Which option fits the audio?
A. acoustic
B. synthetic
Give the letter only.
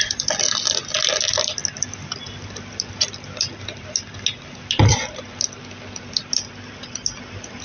A